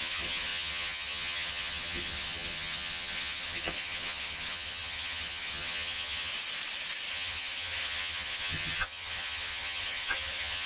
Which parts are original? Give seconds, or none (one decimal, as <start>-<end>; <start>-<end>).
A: 6.3-7.1